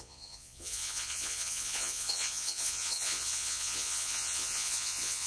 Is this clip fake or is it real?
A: fake